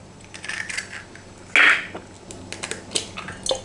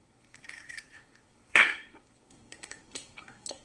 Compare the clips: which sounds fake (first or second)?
second